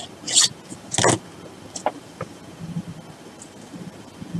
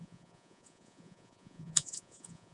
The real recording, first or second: first